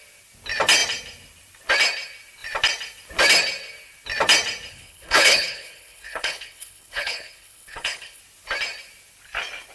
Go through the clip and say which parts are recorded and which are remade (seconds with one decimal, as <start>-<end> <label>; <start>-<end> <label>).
0.0-4.7 recorded; 4.7-8.2 remade; 8.2-9.7 recorded

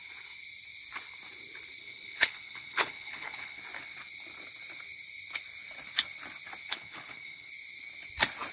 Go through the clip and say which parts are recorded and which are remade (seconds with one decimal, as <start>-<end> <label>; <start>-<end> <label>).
0.0-1.8 recorded; 1.8-3.6 remade; 3.6-6.7 recorded; 6.7-7.5 remade; 7.5-8.5 recorded

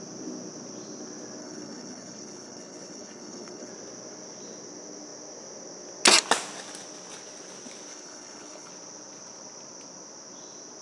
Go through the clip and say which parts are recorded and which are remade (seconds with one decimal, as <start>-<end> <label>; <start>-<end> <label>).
0.0-1.4 recorded; 1.4-3.7 remade; 3.7-7.9 recorded; 7.9-8.7 remade; 8.7-10.8 recorded

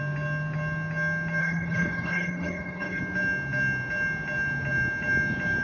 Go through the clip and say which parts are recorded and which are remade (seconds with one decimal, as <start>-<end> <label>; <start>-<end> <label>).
0.0-1.4 recorded; 1.4-3.0 remade; 3.0-5.6 recorded

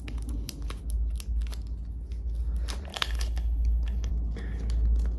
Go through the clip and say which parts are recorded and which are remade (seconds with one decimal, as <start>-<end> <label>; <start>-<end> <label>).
0.0-2.9 recorded; 2.9-4.1 remade; 4.1-5.2 recorded

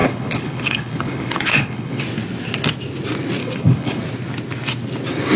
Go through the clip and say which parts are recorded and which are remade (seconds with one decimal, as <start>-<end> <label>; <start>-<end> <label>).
0.0-2.0 remade; 2.0-3.4 recorded; 3.4-4.0 remade; 4.0-5.4 recorded